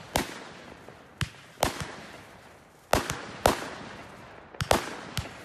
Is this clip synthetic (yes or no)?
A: no